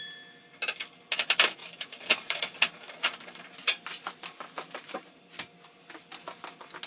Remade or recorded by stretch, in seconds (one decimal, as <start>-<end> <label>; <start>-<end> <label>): 0.0-1.6 recorded; 1.6-5.3 remade; 5.3-6.9 recorded